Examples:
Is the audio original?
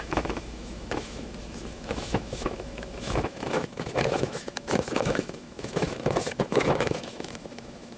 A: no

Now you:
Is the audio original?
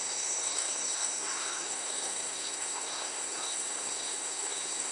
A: no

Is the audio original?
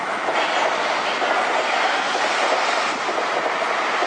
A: yes